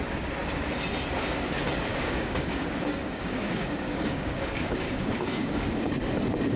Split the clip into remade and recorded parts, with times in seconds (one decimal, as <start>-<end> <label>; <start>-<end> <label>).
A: 0.0-1.9 recorded; 1.9-5.9 remade; 5.9-6.6 recorded